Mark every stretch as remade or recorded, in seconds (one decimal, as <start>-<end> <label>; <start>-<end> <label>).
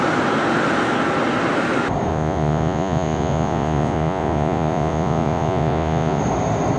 0.0-2.1 recorded; 2.1-6.2 remade; 6.2-6.8 recorded